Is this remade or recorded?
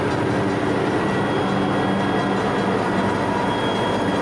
recorded